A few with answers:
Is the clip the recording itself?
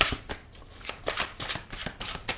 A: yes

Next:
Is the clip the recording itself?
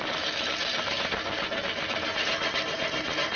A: yes